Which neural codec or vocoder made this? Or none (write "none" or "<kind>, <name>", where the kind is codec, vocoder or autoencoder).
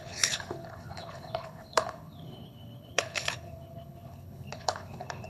codec, HILCodec